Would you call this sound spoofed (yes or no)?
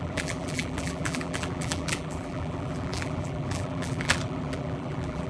yes